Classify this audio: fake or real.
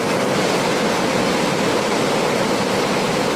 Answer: real